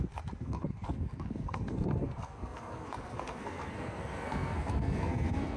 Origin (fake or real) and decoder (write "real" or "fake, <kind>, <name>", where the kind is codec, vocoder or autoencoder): fake, codec, SNAC